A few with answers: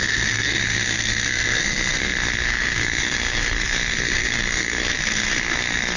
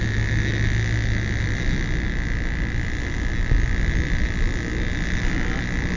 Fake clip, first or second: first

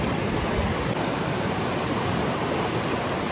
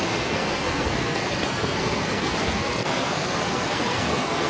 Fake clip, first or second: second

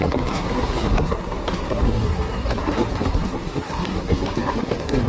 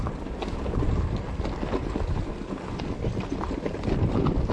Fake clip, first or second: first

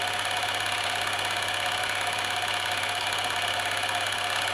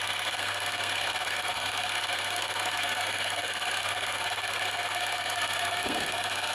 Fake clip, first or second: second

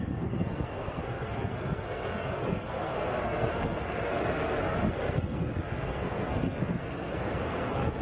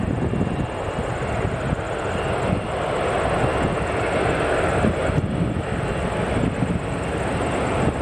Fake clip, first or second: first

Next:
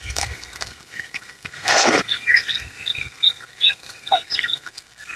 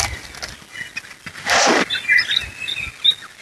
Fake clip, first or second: first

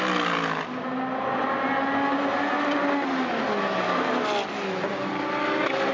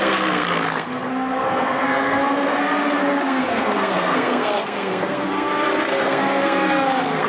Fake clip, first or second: second